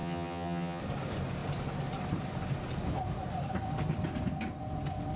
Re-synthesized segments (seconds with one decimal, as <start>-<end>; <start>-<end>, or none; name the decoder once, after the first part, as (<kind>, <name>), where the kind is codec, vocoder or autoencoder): 0.0-0.8 (vocoder, HiFi-GAN)

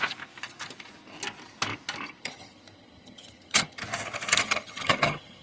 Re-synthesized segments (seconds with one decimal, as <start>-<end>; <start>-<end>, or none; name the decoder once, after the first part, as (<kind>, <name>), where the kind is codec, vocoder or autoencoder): 2.2-3.8 (vocoder, HiFi-GAN); 4.4-5.4

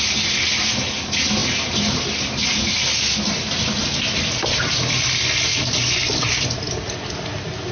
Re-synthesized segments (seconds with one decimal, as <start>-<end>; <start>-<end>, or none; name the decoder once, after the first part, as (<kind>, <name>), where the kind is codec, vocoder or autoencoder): none

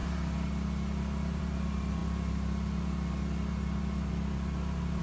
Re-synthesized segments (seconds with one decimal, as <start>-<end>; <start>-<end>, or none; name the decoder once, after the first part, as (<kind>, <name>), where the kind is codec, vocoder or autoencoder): none

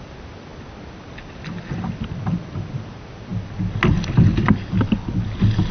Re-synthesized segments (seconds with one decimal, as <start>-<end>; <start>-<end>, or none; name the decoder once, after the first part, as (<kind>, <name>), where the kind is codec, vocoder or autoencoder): none